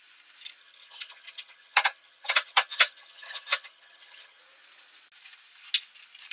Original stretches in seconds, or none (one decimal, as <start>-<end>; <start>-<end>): 0.0-0.6; 4.4-6.3